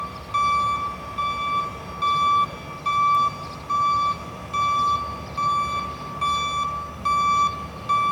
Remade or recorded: recorded